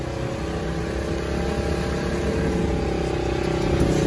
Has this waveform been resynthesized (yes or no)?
no